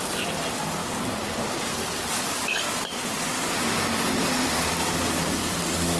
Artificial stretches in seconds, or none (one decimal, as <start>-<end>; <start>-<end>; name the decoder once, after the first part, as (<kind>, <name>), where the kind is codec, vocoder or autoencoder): 0.0-6.0 (vocoder, BigVGAN v2)